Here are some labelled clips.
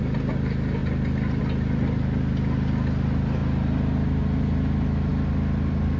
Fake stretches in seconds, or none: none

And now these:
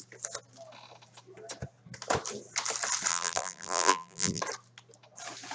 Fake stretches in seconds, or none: 3.1-4.4

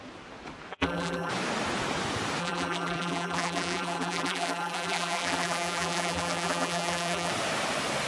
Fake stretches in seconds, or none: 0.7-1.3; 2.4-7.3

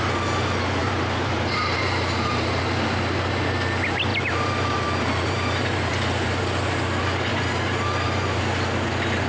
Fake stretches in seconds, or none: 0.8-2.6; 4.1-6.3; 7.3-8.4